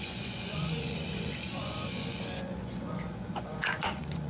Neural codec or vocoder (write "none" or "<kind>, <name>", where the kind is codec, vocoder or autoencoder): vocoder, Vocos